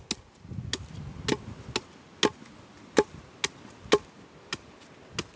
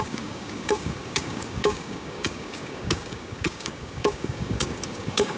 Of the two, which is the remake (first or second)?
second